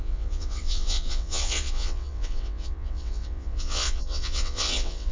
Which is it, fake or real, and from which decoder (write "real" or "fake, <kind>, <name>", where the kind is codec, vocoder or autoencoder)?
fake, vocoder, WaveNeXt